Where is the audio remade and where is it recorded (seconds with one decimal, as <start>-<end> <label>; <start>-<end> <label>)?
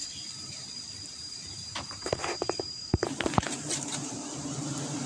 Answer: 0.0-1.1 recorded; 1.1-4.2 remade; 4.2-5.1 recorded